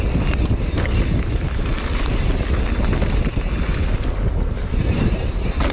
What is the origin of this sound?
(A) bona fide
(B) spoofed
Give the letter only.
A